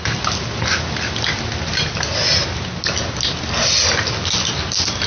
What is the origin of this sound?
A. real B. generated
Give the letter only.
A